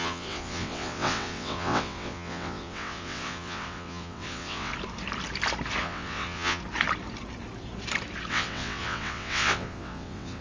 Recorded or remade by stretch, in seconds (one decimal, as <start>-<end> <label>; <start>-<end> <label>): 0.0-4.7 remade; 4.7-5.8 recorded; 5.8-6.6 remade; 6.6-8.3 recorded; 8.3-10.4 remade